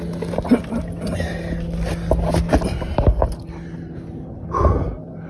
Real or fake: real